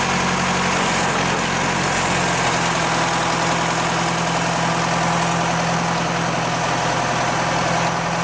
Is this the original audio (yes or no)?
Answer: yes